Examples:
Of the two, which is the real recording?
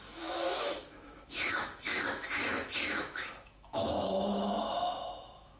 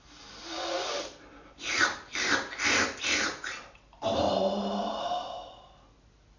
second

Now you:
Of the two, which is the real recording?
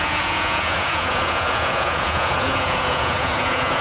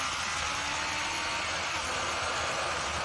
second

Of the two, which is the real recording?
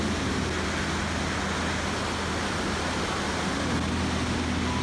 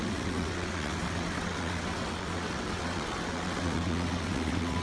first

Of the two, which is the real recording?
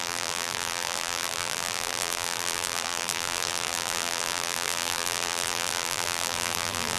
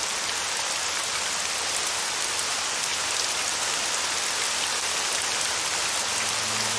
second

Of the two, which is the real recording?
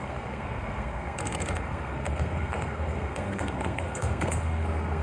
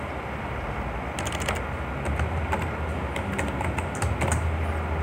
second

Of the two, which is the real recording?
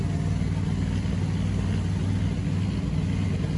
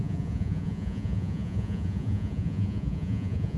first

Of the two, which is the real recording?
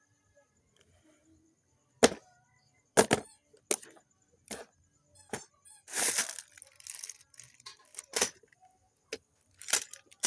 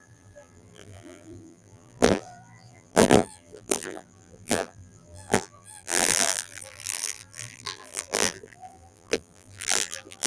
first